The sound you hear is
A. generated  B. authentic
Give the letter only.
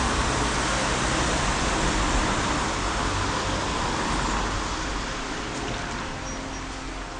B